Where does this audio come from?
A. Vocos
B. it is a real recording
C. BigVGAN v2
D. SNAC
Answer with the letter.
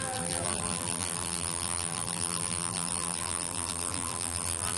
C